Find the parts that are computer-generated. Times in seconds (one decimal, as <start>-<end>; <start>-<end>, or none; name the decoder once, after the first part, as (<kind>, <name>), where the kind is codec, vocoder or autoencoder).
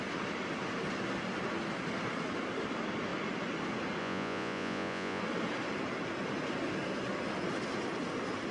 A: 4.0-5.2 (vocoder, Vocos)